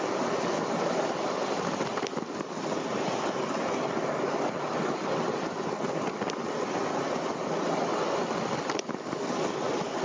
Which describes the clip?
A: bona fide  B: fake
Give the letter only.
A